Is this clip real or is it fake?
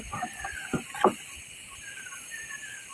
real